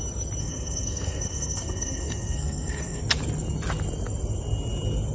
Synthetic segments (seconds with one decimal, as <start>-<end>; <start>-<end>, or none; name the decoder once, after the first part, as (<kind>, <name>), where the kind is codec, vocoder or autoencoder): 0.4-3.0 (codec, SNAC)